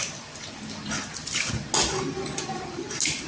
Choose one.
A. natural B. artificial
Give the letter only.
A